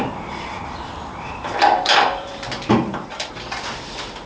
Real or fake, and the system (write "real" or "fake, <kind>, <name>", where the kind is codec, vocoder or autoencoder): fake, vocoder, BigVGAN v2